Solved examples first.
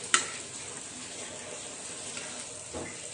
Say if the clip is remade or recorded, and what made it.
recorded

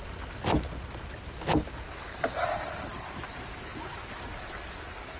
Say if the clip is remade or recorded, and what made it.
recorded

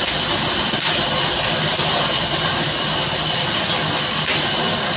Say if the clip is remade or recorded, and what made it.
recorded